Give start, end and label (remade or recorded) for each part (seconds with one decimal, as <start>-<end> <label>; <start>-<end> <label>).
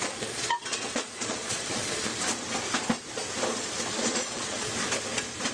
0.0-2.1 remade; 2.1-3.9 recorded; 3.9-4.7 remade; 4.7-5.5 recorded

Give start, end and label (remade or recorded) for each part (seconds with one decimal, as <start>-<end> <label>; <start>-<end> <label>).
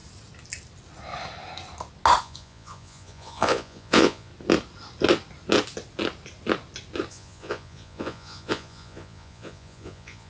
0.0-2.2 recorded; 2.2-4.3 remade; 4.3-7.1 recorded; 7.1-10.3 remade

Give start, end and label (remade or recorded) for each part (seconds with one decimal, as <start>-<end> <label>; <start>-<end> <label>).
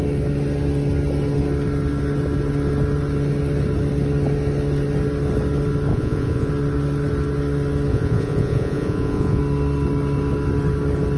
0.0-5.9 recorded; 5.9-6.5 remade; 6.5-7.9 recorded; 7.9-9.4 remade; 9.4-11.2 recorded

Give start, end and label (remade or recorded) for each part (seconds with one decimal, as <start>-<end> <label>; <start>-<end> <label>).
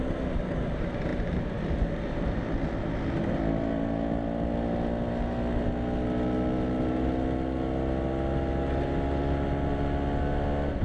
0.0-10.8 recorded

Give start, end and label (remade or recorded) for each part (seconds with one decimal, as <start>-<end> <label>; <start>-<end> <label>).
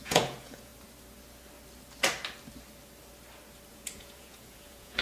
0.0-0.7 remade; 0.7-3.7 recorded; 3.7-5.0 remade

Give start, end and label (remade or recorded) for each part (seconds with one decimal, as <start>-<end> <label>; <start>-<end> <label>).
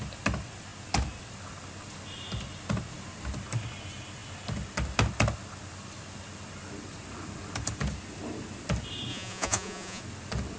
0.0-9.1 recorded; 9.1-10.0 remade; 10.0-10.6 recorded